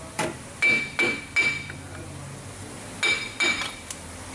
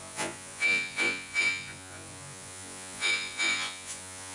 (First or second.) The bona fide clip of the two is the first